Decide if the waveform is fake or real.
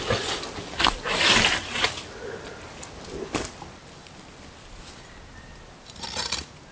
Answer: real